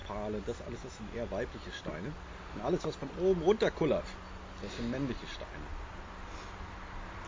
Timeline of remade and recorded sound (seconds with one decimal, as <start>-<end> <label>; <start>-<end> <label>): 0.0-7.3 recorded